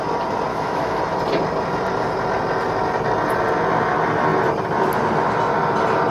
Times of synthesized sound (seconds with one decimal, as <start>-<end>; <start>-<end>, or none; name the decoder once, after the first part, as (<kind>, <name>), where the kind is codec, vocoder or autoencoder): 0.5-1.0 (autoencoder, DAC-VAE)